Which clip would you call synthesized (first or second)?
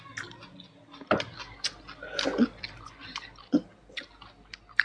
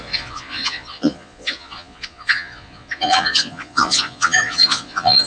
second